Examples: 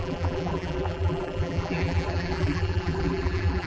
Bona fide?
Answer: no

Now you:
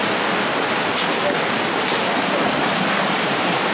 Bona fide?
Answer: no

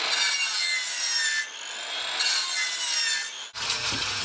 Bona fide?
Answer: yes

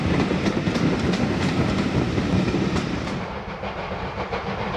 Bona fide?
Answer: no